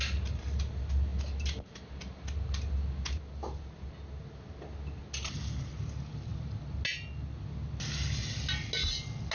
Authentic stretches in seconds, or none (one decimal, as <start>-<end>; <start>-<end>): 0.0-9.3